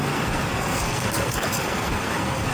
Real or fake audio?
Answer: fake